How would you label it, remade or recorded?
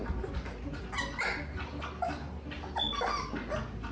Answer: recorded